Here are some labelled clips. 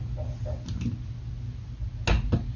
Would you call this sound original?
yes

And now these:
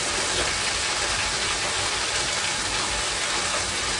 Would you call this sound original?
yes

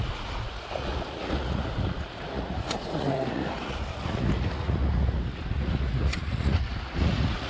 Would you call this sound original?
no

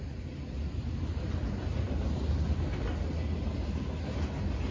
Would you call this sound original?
yes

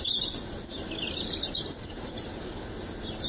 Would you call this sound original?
yes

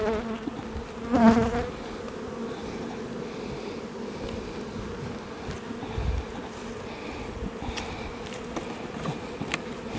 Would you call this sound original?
yes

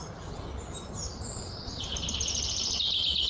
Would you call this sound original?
yes